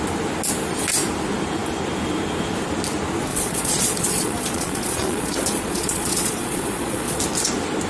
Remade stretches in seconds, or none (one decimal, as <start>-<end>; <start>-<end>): 3.3-7.2